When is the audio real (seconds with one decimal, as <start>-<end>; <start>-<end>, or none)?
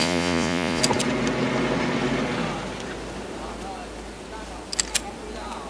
0.8-5.7